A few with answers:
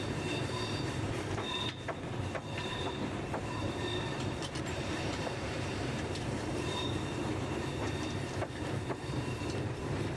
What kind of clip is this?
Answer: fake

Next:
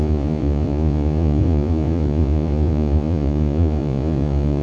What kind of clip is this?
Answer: fake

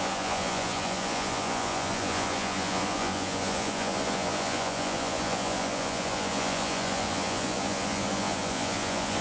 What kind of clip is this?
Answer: fake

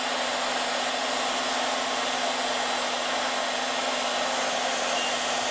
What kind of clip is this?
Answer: real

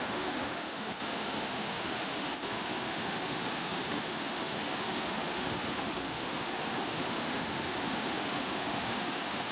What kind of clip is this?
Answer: fake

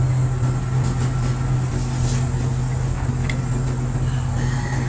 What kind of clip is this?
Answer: real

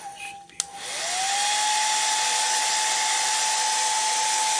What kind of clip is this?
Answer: real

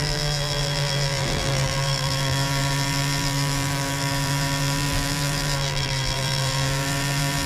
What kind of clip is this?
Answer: fake